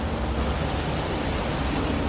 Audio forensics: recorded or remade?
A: recorded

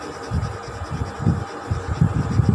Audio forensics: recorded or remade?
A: recorded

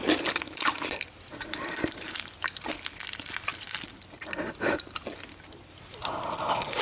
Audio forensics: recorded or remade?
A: remade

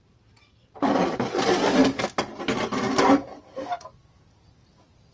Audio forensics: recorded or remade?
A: recorded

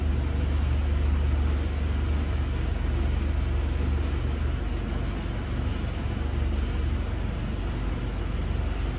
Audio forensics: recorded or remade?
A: recorded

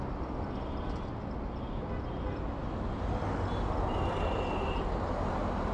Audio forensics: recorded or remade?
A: recorded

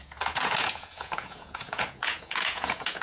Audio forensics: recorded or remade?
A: remade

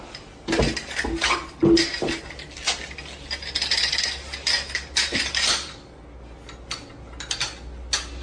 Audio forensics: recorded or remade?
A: recorded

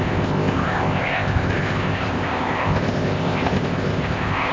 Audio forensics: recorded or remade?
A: remade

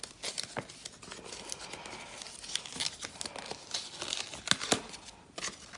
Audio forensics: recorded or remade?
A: recorded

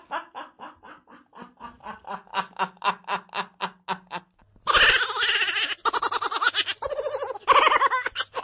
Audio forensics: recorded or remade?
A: recorded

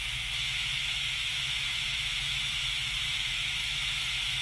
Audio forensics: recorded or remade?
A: remade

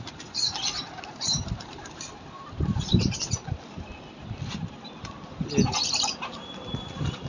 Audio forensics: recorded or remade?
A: remade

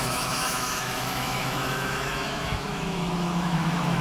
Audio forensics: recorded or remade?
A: remade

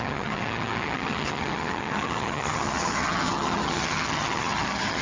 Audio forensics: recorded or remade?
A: remade